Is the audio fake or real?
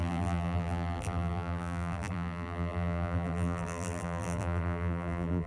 fake